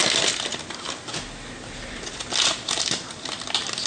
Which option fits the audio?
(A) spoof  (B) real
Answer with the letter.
B